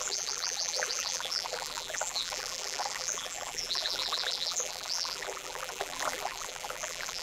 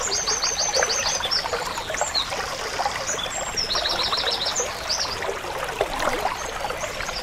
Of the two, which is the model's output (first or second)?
first